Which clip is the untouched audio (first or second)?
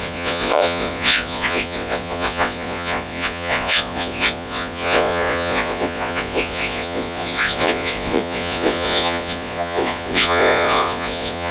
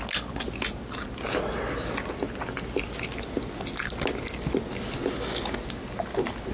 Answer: second